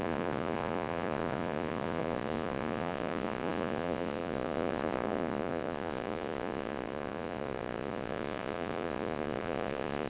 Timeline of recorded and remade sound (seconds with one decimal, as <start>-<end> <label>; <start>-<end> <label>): 0.0-10.1 remade